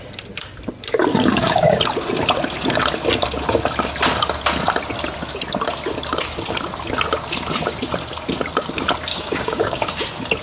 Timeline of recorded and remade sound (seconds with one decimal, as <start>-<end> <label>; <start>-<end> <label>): 0.0-1.1 recorded; 1.1-1.8 remade; 1.8-9.1 recorded; 9.1-10.0 remade; 10.0-10.4 recorded

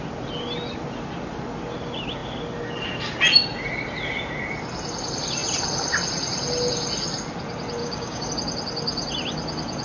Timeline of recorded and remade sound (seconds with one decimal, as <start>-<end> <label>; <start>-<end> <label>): 0.0-7.8 recorded; 7.8-8.3 remade; 8.3-9.8 recorded

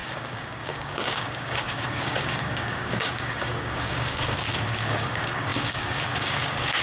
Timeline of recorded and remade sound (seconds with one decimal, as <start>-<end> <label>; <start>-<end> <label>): 0.0-6.8 remade

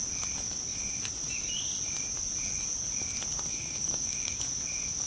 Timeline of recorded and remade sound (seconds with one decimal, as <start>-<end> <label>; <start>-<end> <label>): 0.0-3.5 recorded; 3.5-4.4 remade; 4.4-5.1 recorded

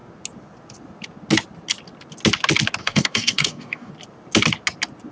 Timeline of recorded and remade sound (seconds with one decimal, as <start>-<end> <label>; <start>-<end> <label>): 0.0-2.8 recorded; 2.8-3.9 remade; 3.9-5.1 recorded

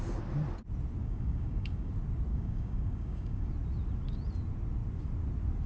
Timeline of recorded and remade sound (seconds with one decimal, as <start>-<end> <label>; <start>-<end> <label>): 0.0-1.0 recorded; 1.0-1.9 remade; 1.9-2.3 recorded; 2.3-3.5 remade; 3.5-5.7 recorded

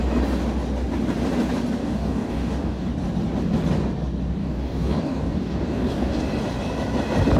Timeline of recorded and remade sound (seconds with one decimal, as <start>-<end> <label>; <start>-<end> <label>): 0.0-1.8 recorded; 1.8-2.9 remade; 2.9-4.4 recorded; 4.4-6.2 remade; 6.2-7.4 recorded

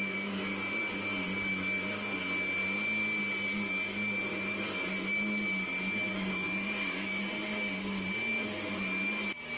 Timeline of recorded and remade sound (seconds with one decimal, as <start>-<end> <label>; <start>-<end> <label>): 0.0-6.1 recorded; 6.1-7.2 remade; 7.2-9.6 recorded